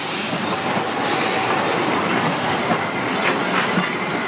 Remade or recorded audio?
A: recorded